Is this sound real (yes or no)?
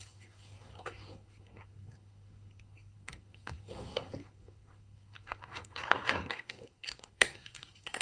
no